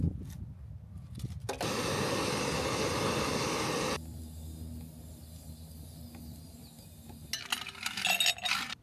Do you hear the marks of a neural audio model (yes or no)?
no